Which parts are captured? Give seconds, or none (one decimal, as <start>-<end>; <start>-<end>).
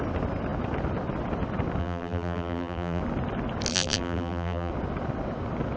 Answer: 0.0-1.8; 3.0-3.7; 4.7-5.8